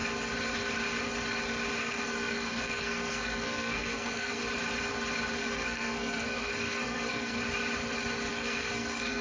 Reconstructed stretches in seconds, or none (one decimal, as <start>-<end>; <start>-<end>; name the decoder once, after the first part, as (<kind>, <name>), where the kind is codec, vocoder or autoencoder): 1.8-4.4 (codec, SNAC); 5.4-7.4; 8.3-9.2